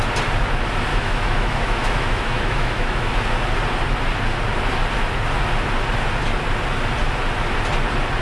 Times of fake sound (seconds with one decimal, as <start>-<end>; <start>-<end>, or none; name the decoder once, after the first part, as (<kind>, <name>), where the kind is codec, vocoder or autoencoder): 0.9-3.1 (autoencoder, DAC-VAE)